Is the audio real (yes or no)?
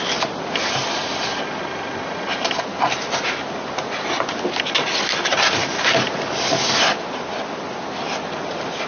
yes